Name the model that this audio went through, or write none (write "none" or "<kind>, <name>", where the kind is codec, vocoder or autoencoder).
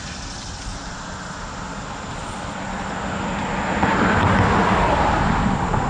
none